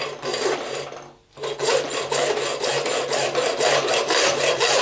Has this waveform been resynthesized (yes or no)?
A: no